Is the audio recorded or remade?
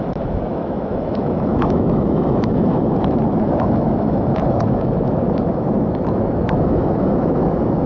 remade